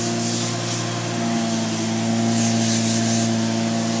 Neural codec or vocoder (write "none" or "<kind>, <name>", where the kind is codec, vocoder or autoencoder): none